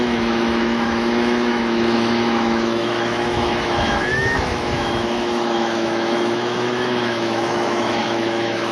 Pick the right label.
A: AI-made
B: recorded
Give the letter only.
A